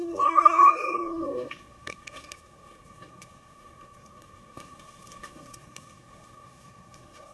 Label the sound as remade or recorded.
remade